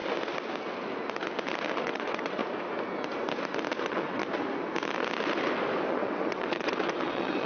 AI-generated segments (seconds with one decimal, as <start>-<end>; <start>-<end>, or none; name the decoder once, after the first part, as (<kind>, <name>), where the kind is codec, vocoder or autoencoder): 1.8-2.4 (vocoder, WaveNeXt); 3.8-4.2; 5.9-7.5